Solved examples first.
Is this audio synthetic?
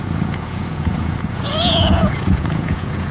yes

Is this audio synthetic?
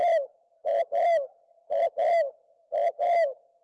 no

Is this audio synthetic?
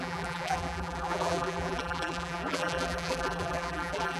yes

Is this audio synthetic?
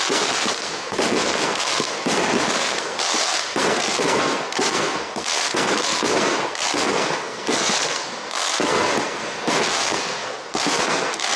yes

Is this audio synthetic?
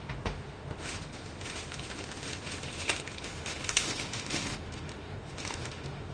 yes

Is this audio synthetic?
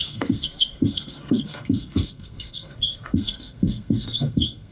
yes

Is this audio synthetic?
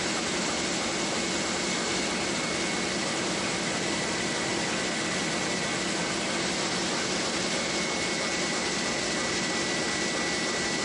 no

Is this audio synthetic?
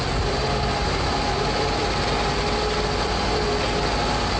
no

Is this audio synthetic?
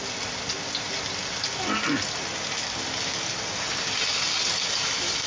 no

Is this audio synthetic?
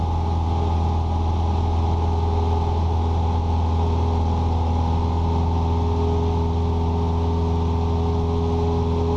no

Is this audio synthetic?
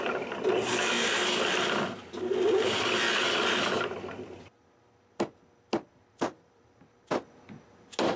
no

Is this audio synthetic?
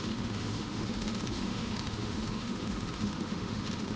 yes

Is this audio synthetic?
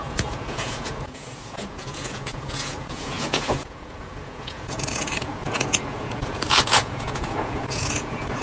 yes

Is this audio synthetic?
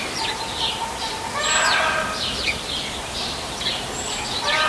yes